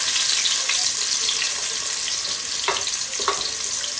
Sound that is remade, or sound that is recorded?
recorded